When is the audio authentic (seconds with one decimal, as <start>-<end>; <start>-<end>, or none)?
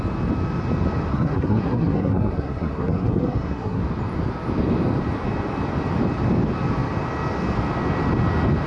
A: 0.0-1.1; 3.8-8.7